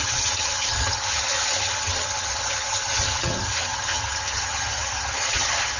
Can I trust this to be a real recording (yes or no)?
no